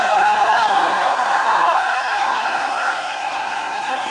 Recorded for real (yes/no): no